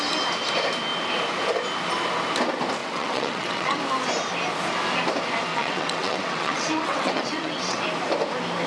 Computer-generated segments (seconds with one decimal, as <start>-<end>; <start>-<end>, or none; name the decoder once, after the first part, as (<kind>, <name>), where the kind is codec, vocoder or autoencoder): 2.8-3.8 (vocoder, WaveNeXt); 5.5-7.8